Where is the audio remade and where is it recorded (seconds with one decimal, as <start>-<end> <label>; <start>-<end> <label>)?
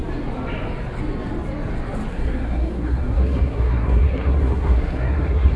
0.0-2.1 recorded; 2.1-5.6 remade